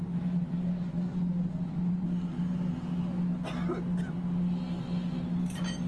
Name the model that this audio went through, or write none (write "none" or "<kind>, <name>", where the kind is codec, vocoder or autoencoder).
none